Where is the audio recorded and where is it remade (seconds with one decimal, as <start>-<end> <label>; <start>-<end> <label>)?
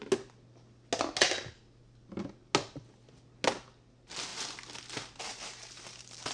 0.0-6.3 recorded